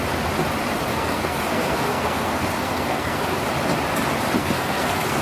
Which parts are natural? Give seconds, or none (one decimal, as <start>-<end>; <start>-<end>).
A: 0.0-0.9; 3.2-4.4